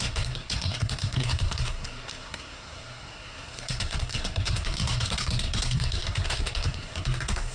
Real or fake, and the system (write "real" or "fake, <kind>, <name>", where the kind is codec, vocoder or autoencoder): fake, codec, SNAC